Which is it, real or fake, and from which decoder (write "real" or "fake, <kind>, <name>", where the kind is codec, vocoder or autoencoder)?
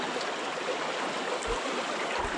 real